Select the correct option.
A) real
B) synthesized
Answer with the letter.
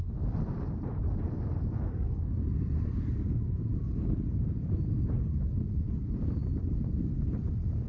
A